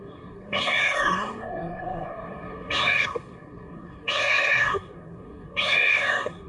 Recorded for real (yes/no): no